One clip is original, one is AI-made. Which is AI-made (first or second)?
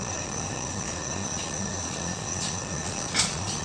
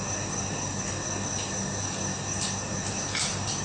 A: first